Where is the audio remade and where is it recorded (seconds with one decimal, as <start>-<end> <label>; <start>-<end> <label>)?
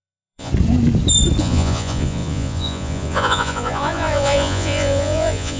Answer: 0.0-0.5 remade; 0.5-1.4 recorded; 1.4-5.6 remade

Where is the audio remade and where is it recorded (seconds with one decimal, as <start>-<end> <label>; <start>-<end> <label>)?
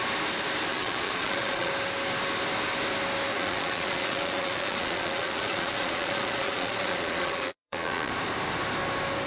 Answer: 0.0-0.7 recorded; 0.7-1.7 remade; 1.7-3.3 recorded; 3.3-8.1 remade; 8.1-9.3 recorded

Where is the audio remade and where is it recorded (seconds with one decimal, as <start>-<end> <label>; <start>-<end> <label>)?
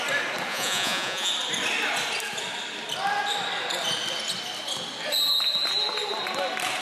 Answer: 0.0-0.5 recorded; 0.5-1.3 remade; 1.3-6.8 recorded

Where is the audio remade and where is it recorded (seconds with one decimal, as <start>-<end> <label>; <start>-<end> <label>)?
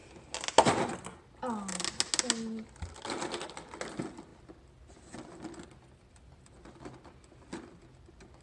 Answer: 0.0-8.4 recorded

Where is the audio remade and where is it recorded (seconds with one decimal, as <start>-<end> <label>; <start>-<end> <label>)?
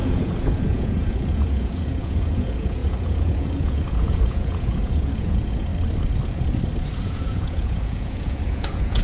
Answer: 0.0-5.7 remade; 5.7-7.0 recorded; 7.0-9.0 remade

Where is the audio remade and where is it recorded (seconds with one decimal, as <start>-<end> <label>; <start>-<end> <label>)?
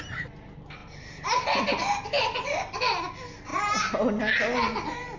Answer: 0.0-5.2 recorded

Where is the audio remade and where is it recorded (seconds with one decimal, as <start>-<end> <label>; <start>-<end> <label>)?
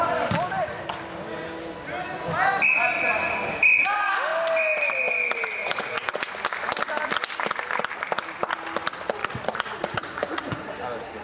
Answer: 0.0-5.6 recorded; 5.6-6.3 remade; 6.3-9.2 recorded; 9.2-10.7 remade; 10.7-11.2 recorded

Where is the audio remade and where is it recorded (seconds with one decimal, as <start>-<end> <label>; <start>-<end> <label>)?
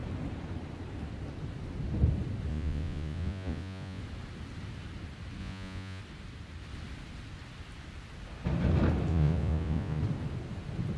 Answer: 0.0-2.5 recorded; 2.5-4.0 remade; 4.0-5.4 recorded; 5.4-6.0 remade; 6.0-9.1 recorded; 9.1-10.0 remade; 10.0-11.0 recorded